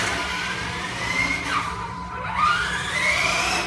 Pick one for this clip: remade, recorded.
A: remade